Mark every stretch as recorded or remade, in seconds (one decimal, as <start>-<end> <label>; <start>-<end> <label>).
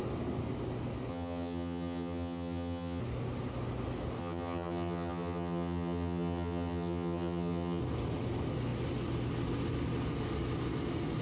0.0-1.1 recorded; 1.1-3.0 remade; 3.0-4.2 recorded; 4.2-7.8 remade; 7.8-11.2 recorded